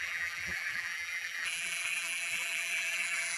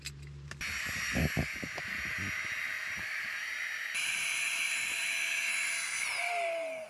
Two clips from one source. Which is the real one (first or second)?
second